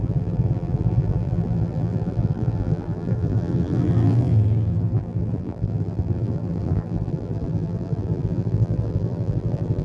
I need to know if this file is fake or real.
fake